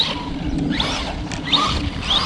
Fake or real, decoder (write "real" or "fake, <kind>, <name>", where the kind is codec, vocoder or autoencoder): real